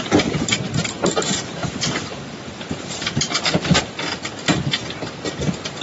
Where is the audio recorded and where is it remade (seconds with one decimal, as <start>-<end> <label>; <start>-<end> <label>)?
0.0-1.6 recorded; 1.6-3.8 remade; 3.8-5.8 recorded